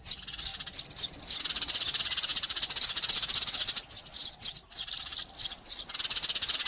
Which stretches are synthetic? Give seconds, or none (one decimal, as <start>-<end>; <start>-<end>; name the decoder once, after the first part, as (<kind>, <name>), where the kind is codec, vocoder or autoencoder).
none